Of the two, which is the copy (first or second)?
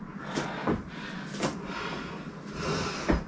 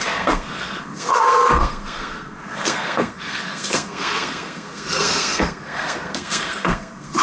second